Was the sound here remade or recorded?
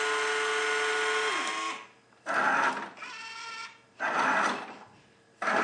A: recorded